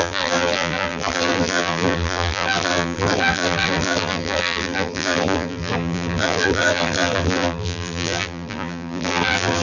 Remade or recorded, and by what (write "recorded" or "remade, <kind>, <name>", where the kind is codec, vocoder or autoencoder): remade, vocoder, BigVGAN v2